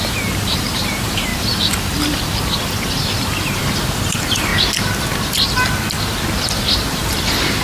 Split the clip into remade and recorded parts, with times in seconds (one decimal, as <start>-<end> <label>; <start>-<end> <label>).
0.0-1.3 remade; 1.3-3.2 recorded; 3.2-4.5 remade; 4.5-6.9 recorded; 6.9-7.6 remade